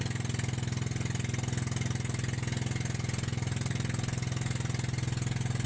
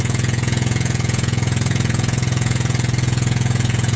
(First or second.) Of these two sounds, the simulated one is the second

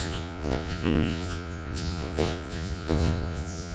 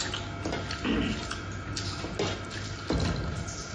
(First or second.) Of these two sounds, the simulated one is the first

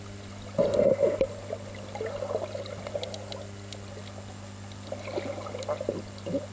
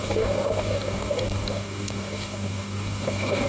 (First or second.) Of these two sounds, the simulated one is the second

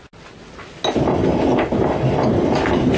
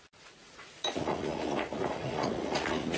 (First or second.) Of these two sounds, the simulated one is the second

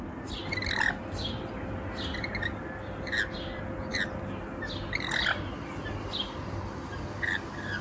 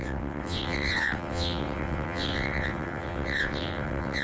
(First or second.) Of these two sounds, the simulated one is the second